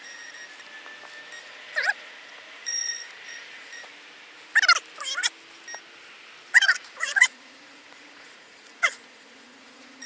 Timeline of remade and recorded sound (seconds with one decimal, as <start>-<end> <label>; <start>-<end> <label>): 0.0-0.4 remade; 0.4-1.4 recorded; 1.4-3.9 remade; 3.9-6.5 recorded; 6.5-10.1 remade